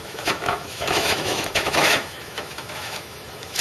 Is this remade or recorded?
remade